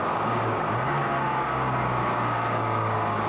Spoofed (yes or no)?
yes